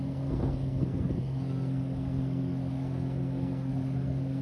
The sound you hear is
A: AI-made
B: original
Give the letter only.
A